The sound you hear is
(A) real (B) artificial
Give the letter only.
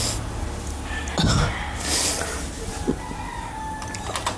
A